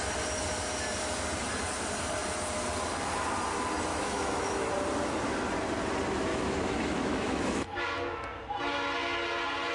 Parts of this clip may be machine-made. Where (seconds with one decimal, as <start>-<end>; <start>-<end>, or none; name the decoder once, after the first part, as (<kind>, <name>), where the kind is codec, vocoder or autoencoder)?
3.9-4.7 (autoencoder, DAC-VAE); 6.3-7.8